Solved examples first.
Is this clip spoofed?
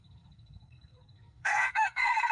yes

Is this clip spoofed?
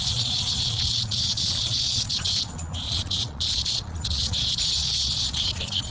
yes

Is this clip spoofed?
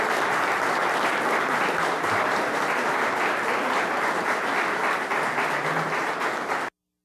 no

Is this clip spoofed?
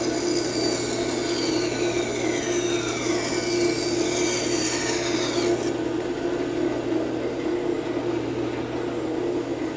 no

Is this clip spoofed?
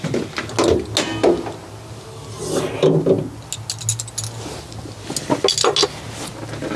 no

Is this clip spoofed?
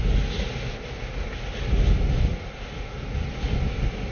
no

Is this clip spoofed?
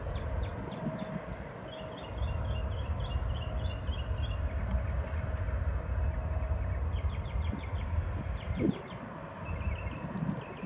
no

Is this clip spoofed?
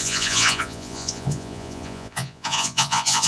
yes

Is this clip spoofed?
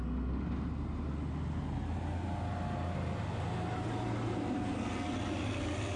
no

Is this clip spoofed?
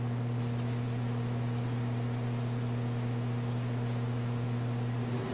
no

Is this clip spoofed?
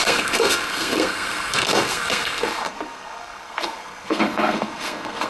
yes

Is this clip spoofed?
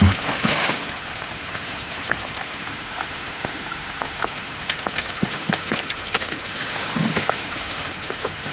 yes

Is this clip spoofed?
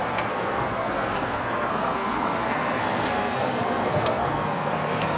yes